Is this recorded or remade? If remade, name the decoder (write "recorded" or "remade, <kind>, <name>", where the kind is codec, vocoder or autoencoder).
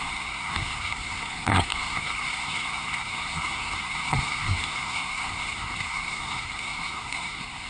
remade, codec, SNAC